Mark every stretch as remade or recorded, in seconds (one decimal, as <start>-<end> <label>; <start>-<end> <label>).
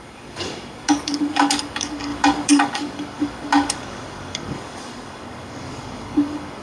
0.0-6.6 remade